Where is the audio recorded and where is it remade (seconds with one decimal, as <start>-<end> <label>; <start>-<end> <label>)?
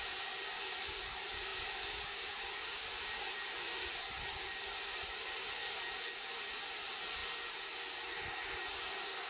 0.0-9.3 recorded